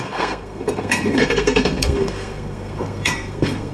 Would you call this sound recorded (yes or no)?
no